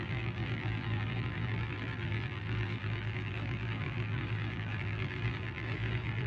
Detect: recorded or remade remade